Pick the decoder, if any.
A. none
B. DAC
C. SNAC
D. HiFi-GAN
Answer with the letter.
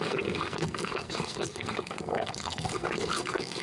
C